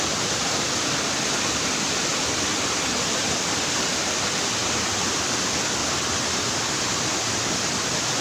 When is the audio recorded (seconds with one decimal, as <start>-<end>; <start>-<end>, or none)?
0.0-2.1; 4.1-8.2